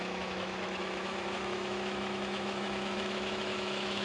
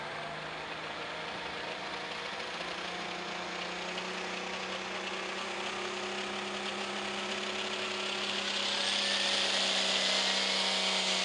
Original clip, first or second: second